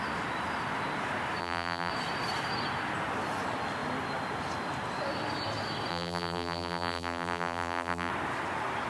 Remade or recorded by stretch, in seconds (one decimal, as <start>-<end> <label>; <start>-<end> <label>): 0.0-1.4 recorded; 1.4-1.9 remade; 1.9-5.9 recorded; 5.9-8.1 remade; 8.1-8.9 recorded